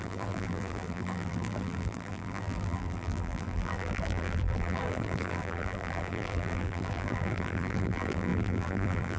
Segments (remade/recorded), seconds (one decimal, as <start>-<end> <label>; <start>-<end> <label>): 0.0-9.2 remade